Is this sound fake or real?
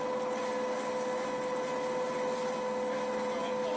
real